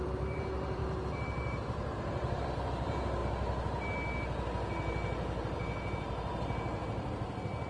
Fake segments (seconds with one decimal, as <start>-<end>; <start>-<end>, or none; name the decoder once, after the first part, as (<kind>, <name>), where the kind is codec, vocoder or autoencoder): 0.0-3.2 (vocoder, BigVGAN v2)